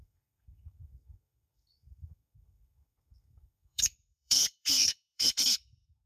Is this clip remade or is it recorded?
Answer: remade